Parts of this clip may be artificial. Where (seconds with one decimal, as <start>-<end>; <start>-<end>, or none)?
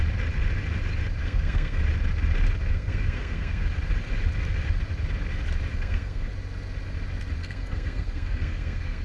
1.2-1.8; 2.7-3.6; 5.7-6.3; 7.4-9.0